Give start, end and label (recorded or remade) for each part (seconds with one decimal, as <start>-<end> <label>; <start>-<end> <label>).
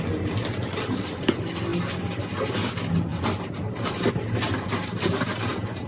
0.0-5.9 recorded